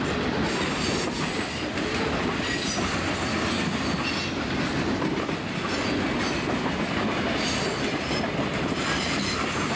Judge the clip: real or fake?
real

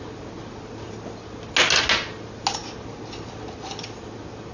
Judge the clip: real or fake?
real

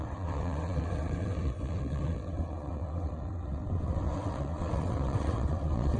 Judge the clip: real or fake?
fake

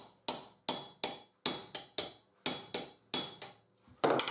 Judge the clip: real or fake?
real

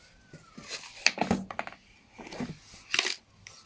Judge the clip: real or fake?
real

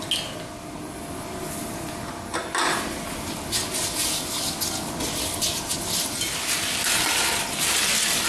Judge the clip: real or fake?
real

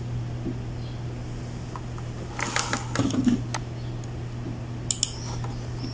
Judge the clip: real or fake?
real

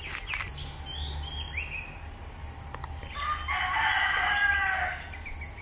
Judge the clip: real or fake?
real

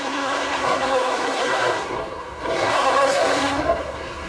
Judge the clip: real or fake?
fake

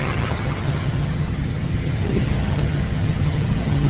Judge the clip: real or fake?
fake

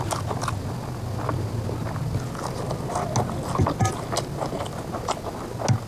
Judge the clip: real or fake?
real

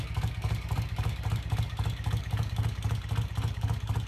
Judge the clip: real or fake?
fake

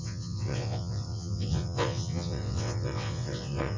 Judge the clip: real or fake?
fake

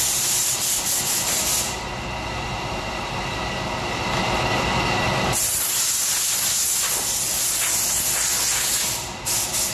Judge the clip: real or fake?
real